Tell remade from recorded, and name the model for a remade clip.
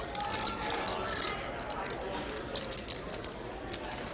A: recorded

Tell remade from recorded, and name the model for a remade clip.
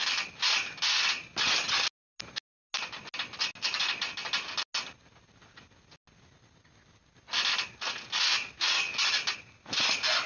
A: recorded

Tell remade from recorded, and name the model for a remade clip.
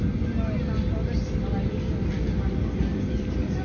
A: recorded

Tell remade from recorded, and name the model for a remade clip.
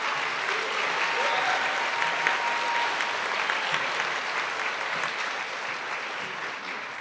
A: recorded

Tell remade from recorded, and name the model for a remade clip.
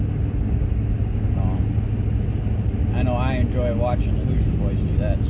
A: recorded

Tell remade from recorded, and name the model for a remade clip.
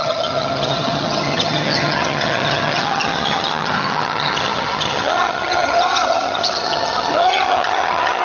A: remade, vocoder, HiFi-GAN